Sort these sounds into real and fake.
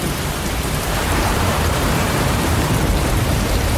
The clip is fake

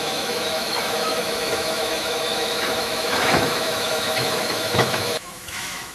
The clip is fake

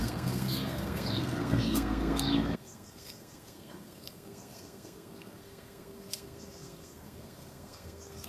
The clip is fake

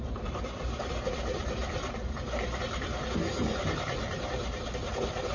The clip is fake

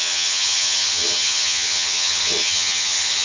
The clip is fake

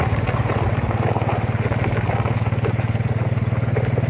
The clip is real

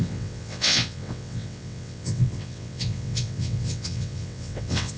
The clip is fake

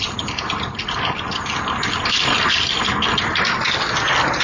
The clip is real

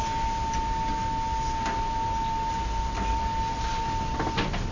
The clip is real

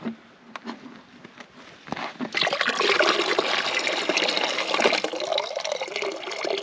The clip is real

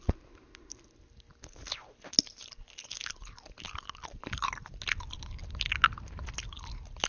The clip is real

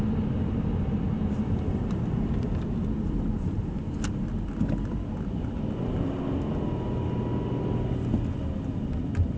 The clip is real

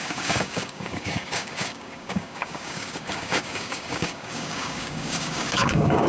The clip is fake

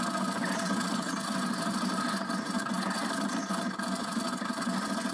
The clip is fake